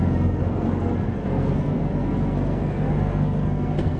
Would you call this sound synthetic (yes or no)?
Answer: yes